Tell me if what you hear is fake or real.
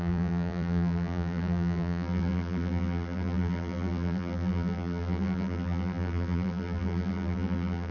fake